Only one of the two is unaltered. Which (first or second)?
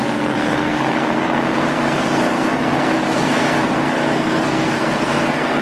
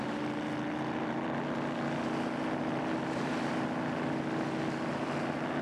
second